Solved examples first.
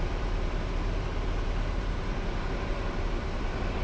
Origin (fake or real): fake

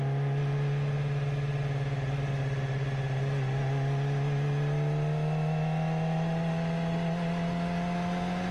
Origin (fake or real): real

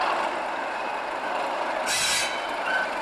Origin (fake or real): real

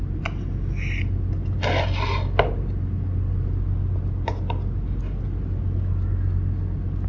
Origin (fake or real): real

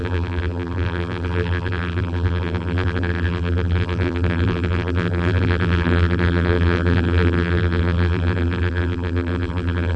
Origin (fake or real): fake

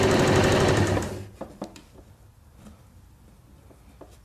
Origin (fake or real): real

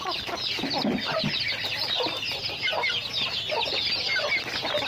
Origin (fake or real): real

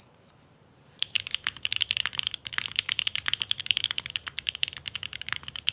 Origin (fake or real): fake